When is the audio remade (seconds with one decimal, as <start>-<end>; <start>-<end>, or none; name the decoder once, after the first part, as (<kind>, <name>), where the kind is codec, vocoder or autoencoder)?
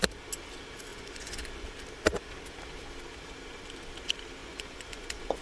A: 0.9-1.7 (vocoder, Vocos); 4.4-5.4